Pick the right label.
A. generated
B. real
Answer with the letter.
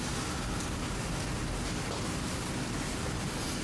B